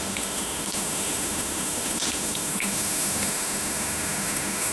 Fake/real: fake